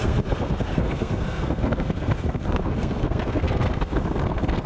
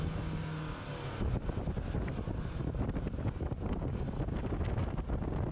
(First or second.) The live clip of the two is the second